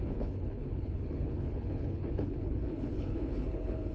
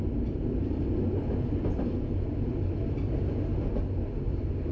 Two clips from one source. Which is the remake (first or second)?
first